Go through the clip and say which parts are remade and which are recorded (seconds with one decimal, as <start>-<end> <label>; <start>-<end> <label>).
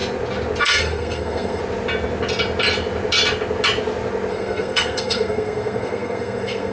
0.0-0.6 recorded; 0.6-1.6 remade; 1.6-4.3 recorded; 4.3-6.7 remade